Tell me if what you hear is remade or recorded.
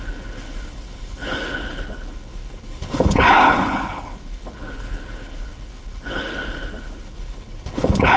remade